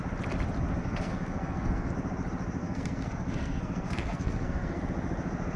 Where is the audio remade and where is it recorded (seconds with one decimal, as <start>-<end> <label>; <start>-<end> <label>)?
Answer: 0.0-0.8 recorded; 0.8-1.9 remade; 1.9-2.6 recorded; 2.6-4.8 remade; 4.8-5.6 recorded